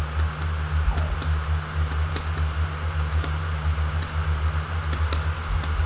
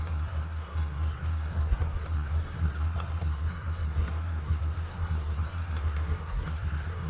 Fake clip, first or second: second